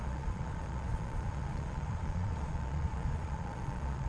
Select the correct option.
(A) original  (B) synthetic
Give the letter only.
B